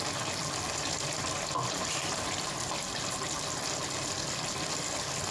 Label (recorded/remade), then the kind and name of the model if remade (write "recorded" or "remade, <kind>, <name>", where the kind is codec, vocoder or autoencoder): recorded